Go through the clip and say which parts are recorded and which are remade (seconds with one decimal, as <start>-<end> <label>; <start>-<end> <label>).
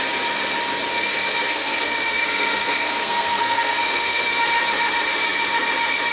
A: 0.0-0.9 recorded; 0.9-4.2 remade; 4.2-6.1 recorded